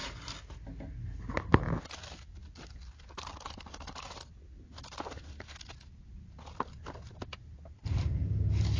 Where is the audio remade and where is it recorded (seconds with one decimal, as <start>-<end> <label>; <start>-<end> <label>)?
0.0-8.8 recorded